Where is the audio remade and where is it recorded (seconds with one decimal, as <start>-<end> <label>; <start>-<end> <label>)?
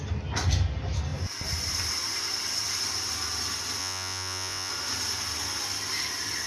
0.0-3.8 recorded; 3.8-4.7 remade; 4.7-6.5 recorded